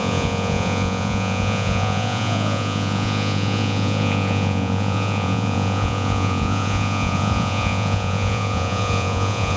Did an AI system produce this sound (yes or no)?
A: yes